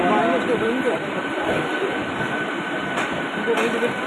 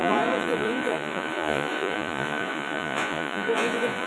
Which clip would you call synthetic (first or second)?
second